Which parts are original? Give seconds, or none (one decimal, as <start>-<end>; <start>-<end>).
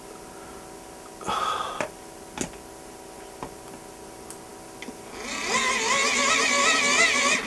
0.0-7.5